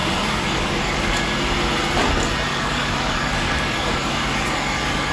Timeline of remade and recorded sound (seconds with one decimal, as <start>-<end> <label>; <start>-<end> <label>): 0.0-1.2 remade; 1.2-2.5 recorded; 2.5-5.1 remade